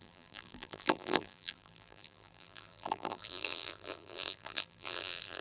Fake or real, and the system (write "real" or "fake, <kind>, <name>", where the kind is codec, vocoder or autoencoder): fake, vocoder, BigVGAN v2